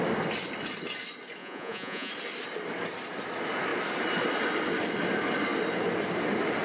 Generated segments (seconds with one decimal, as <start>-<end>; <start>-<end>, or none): 1.4-2.1